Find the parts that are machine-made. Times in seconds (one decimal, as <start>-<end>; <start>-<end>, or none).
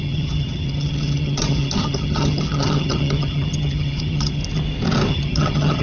0.0-4.4; 5.1-5.8